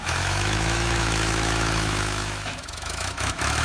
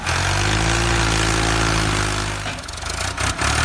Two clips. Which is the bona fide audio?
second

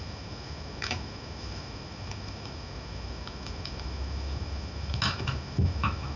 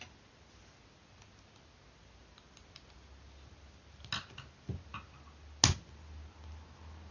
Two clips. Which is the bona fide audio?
second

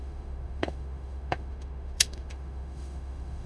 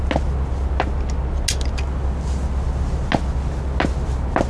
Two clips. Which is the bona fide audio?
second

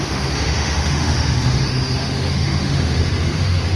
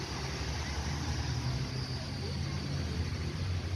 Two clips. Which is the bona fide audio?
second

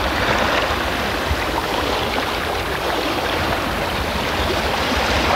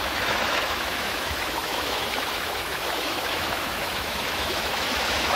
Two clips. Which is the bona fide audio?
first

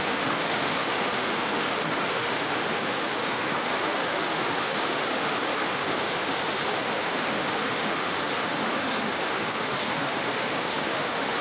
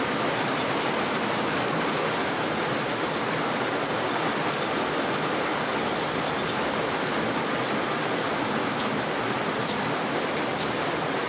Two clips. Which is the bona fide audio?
second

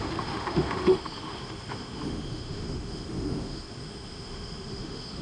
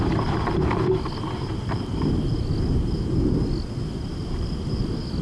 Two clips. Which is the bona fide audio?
second